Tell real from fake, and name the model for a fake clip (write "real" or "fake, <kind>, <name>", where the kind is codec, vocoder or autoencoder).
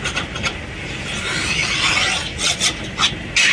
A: real